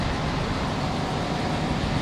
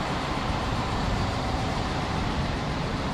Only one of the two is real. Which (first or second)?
first